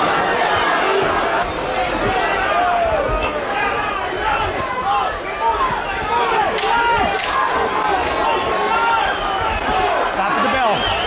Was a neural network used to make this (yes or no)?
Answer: no